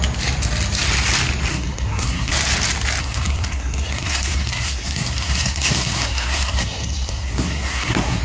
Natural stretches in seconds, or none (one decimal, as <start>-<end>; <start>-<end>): 0.0-1.5; 2.3-3.0